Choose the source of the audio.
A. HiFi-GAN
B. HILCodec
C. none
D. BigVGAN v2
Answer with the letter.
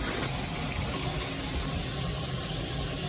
C